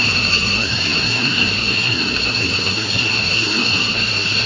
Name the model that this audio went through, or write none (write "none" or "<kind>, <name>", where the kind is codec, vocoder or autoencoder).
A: codec, SNAC